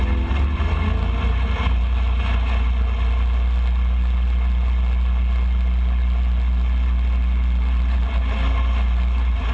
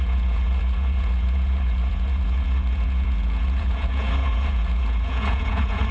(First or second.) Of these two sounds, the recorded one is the first